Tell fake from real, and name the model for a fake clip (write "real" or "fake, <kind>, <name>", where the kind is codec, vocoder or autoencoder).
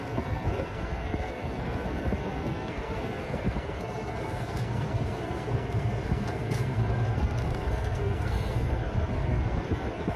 fake, codec, SNAC